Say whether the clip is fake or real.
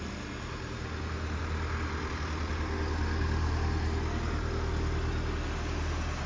real